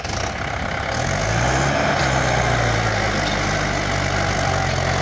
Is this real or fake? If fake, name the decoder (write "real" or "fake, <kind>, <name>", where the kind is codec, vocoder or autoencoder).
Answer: real